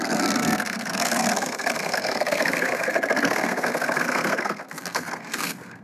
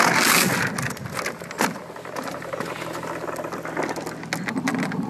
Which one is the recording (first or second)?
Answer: second